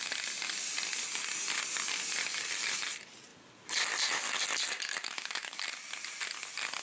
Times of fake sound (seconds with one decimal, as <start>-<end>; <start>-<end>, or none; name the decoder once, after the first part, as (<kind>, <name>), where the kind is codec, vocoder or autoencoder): 5.0-5.6 (autoencoder, DAC-VAE)